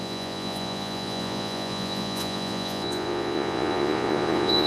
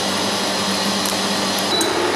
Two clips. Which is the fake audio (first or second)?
first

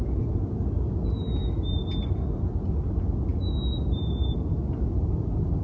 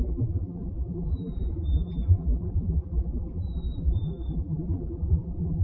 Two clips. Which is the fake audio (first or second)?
second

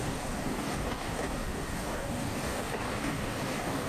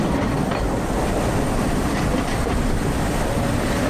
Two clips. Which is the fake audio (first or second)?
first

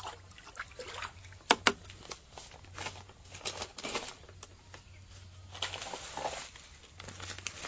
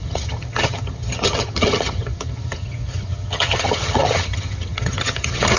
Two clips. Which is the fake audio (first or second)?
second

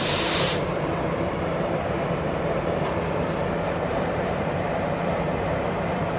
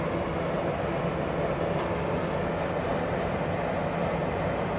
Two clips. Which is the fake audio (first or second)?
first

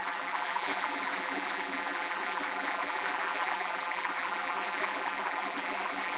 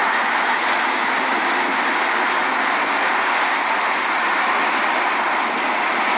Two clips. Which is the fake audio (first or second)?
first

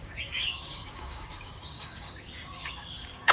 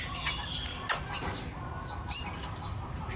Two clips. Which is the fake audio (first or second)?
first